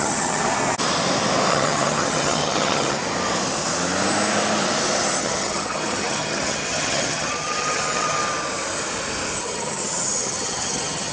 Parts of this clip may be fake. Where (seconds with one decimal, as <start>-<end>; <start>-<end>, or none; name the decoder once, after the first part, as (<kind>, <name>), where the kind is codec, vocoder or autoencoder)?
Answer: 0.0-0.4 (vocoder, HiFi-GAN); 1.5-3.0; 5.2-8.2; 9.4-11.1